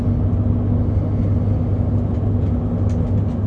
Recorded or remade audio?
recorded